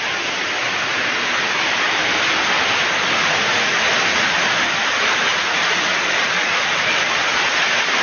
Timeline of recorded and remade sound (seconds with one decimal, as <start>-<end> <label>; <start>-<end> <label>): 0.0-3.2 recorded; 3.2-3.8 remade; 3.8-5.3 recorded; 5.3-6.7 remade; 6.7-8.0 recorded